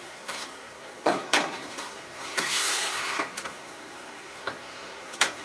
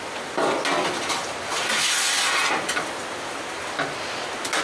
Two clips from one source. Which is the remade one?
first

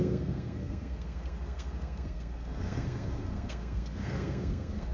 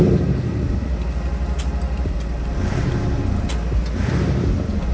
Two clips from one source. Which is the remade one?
first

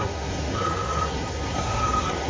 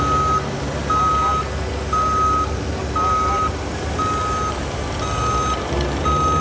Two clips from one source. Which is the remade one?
first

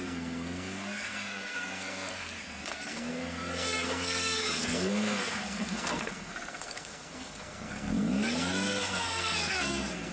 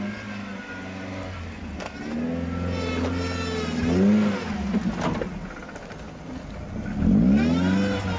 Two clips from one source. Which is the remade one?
first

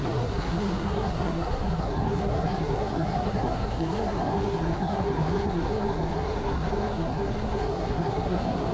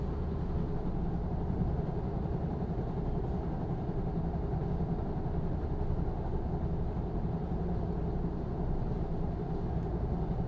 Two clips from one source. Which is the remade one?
first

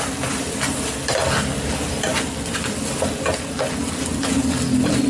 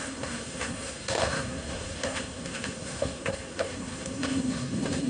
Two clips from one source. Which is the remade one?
second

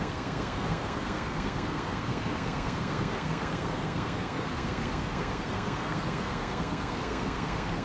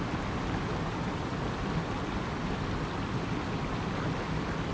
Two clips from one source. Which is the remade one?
first